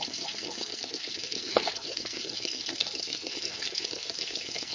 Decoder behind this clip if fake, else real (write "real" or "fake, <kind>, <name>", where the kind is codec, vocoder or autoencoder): fake, codec, SNAC